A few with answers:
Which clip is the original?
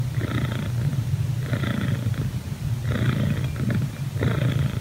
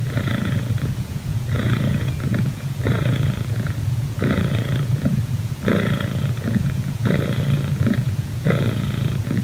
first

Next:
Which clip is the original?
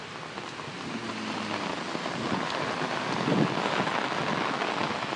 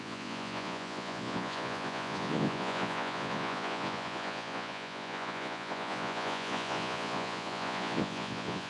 first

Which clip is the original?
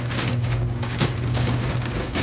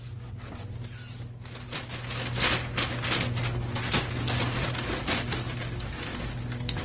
second